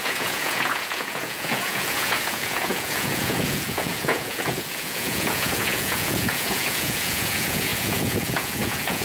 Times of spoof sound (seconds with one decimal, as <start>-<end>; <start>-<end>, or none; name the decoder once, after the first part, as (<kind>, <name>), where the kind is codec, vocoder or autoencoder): 0.0-9.0 (vocoder, Vocos)